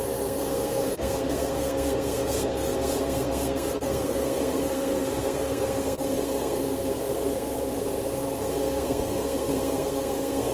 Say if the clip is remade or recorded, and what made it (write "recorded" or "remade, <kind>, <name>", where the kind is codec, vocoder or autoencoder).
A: remade, codec, SNAC